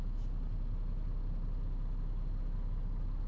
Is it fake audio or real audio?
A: real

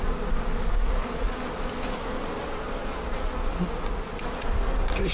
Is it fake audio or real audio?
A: real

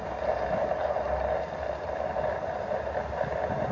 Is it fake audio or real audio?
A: real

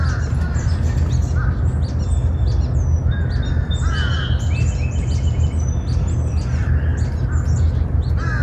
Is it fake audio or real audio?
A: real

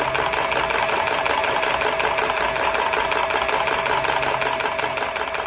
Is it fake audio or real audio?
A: real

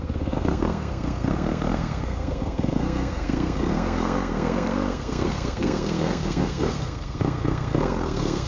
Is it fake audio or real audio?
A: fake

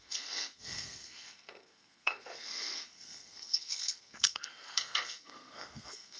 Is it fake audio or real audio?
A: fake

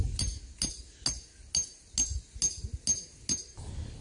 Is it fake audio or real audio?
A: real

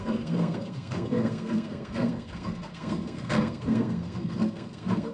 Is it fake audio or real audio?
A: fake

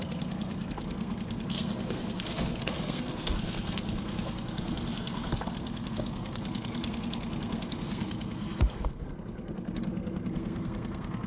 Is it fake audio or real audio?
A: fake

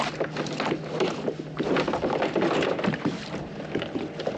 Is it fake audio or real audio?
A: real